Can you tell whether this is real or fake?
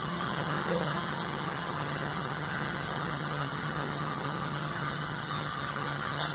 fake